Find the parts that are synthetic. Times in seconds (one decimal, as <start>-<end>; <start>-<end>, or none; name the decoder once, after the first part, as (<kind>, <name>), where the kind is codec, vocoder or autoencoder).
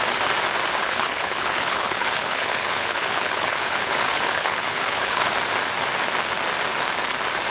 0.8-5.3 (codec, HILCodec)